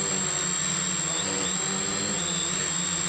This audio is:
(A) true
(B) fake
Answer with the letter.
A